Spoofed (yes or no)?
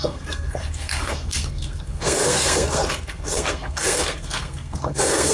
yes